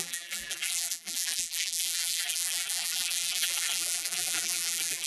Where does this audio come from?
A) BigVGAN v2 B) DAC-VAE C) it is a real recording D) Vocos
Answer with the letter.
A